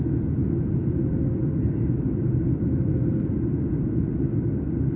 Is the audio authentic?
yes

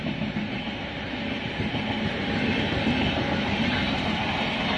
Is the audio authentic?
yes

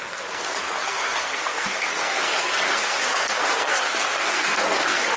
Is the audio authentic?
no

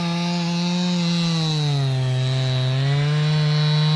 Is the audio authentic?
yes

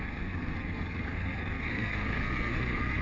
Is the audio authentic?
no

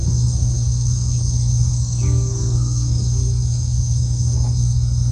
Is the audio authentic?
no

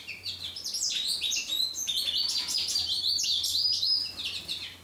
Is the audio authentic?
yes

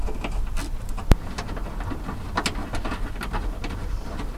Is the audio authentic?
yes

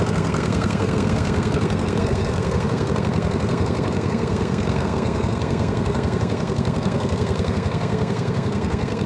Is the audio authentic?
no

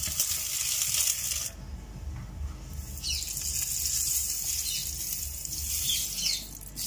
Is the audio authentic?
yes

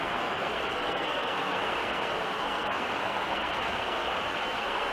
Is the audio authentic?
no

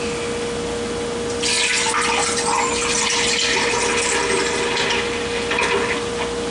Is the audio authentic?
yes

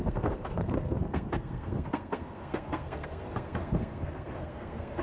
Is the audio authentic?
no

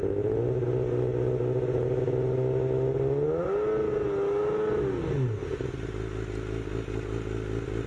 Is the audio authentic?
yes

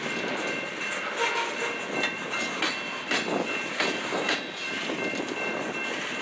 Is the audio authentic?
yes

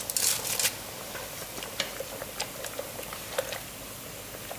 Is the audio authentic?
yes